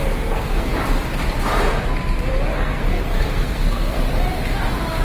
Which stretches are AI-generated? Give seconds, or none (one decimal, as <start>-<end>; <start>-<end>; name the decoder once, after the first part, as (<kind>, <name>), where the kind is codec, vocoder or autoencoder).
0.0-0.7 (codec, SNAC); 2.5-4.0